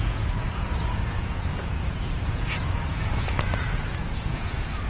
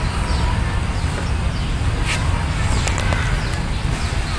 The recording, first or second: second